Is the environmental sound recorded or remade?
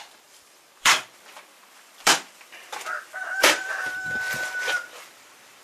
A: remade